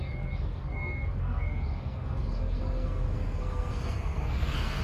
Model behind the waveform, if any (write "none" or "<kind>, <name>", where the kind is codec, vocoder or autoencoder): codec, SNAC